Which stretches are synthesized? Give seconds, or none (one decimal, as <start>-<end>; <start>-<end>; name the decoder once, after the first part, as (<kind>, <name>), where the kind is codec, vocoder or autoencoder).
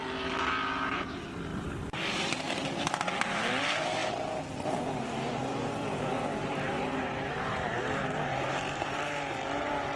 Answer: 5.4-7.7 (vocoder, BigVGAN v2); 8.3-9.0